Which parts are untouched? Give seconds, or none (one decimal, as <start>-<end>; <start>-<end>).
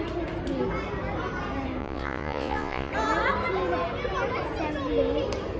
0.0-1.8; 2.9-5.6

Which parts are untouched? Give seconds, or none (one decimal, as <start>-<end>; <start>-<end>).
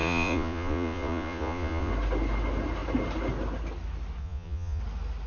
1.9-4.2; 4.8-5.3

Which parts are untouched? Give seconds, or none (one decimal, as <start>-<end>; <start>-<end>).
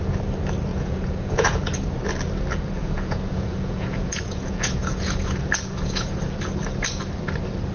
0.0-0.7; 1.6-2.8; 6.2-7.7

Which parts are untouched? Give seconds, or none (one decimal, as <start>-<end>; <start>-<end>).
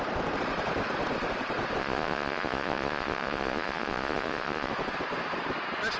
0.0-1.8; 4.7-6.0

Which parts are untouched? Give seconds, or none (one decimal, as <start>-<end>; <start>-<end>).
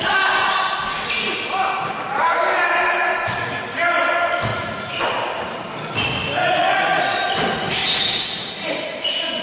0.0-4.5; 5.0-6.4; 7.0-9.4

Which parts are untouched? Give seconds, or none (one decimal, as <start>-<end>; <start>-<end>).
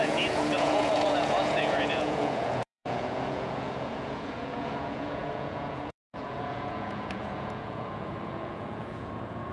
none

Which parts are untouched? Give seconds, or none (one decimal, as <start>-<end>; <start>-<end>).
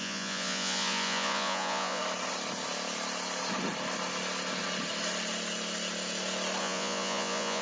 2.0-6.6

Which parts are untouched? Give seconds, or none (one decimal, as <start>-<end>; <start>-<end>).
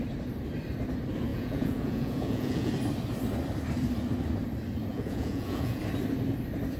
0.0-1.3; 2.7-4.9; 5.8-6.8